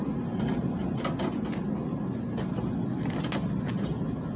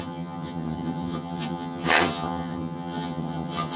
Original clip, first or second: first